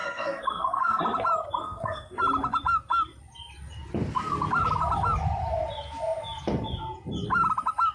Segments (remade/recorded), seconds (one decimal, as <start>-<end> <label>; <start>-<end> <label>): 0.0-1.0 remade; 1.0-1.6 recorded; 1.6-2.2 remade; 2.2-7.9 recorded